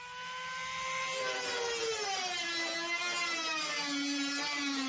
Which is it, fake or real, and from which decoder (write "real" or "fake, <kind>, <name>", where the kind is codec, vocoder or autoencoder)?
real